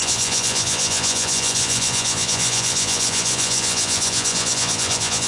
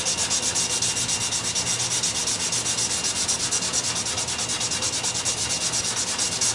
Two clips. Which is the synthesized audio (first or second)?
first